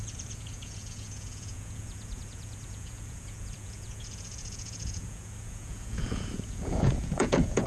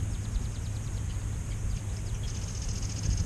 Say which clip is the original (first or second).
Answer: second